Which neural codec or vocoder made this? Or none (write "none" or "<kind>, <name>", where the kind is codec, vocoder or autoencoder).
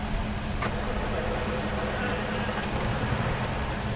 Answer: none